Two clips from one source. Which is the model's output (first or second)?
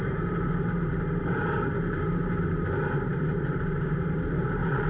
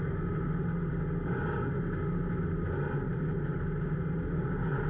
first